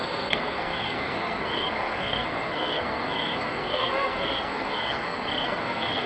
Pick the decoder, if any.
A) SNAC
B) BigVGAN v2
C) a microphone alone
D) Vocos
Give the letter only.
A